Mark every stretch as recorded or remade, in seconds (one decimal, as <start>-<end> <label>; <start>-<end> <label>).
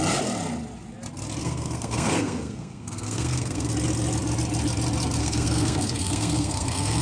0.0-1.4 recorded; 1.4-3.7 remade; 3.7-5.2 recorded; 5.2-7.0 remade